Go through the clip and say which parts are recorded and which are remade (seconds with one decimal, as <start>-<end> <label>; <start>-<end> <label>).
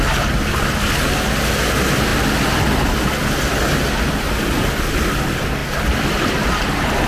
0.0-7.1 recorded